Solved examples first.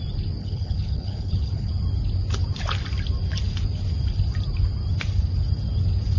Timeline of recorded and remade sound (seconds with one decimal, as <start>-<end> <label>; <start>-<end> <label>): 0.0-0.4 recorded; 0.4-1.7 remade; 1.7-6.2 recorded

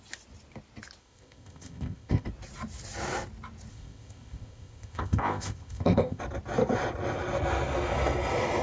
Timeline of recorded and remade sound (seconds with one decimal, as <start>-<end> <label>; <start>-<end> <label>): 0.0-1.0 recorded; 1.0-2.3 remade; 2.3-3.7 recorded; 3.7-6.2 remade; 6.2-8.6 recorded

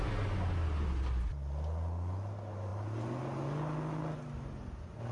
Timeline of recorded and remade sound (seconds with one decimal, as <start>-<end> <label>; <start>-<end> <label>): 0.0-5.1 recorded

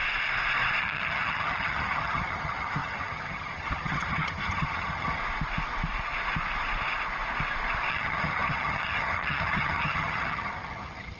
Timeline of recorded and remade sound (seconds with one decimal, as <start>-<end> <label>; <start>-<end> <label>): 0.0-0.8 recorded; 0.8-5.2 remade; 5.2-7.9 recorded; 7.9-11.2 remade

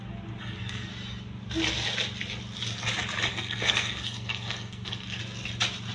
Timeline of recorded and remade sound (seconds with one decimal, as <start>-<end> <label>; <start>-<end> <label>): 0.0-0.4 recorded; 0.4-0.9 remade; 0.9-3.3 recorded; 3.3-5.2 remade; 5.2-5.9 recorded

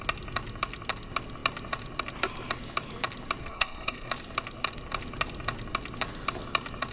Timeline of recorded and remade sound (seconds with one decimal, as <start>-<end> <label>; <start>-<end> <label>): 0.0-3.4 recorded; 3.4-4.1 remade; 4.1-6.9 recorded

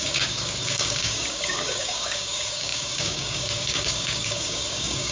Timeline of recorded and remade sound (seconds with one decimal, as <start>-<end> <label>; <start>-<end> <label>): 0.0-5.1 remade

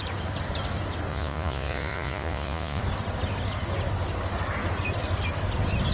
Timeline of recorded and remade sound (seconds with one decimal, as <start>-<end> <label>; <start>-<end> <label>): 0.0-1.1 recorded; 1.1-2.8 remade; 2.8-5.9 recorded